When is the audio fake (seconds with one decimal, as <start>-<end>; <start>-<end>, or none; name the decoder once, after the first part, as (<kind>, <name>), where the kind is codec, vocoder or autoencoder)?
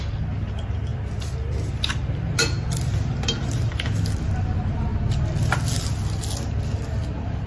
none